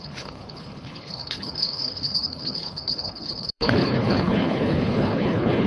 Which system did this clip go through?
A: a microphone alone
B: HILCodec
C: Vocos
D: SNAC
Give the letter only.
B